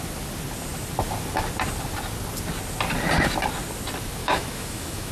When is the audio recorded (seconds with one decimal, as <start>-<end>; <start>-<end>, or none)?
0.0-4.2